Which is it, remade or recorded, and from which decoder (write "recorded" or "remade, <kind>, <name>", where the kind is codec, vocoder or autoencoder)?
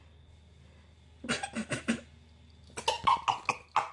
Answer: recorded